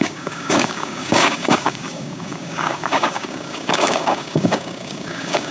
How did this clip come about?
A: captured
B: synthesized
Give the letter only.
B